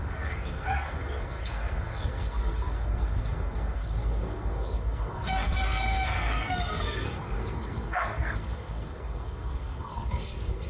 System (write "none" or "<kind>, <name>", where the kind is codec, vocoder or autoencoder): codec, SNAC